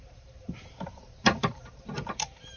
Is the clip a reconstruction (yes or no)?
yes